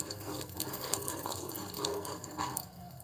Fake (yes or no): yes